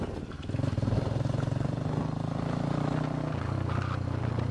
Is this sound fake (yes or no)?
no